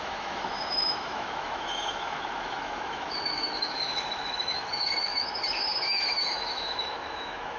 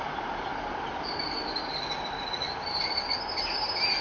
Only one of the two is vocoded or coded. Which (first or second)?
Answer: first